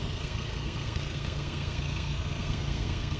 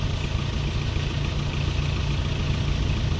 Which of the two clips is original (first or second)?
second